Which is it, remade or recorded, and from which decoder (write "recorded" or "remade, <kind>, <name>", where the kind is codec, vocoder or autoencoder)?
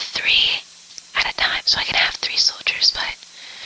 remade, vocoder, BigVGAN v2